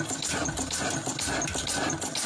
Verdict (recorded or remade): recorded